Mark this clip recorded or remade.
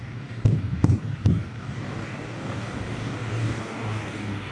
remade